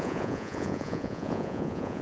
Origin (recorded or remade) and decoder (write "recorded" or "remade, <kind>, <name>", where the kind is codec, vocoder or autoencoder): remade, vocoder, Vocos